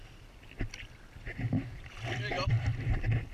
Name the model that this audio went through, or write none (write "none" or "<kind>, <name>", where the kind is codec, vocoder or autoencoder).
vocoder, BigVGAN v2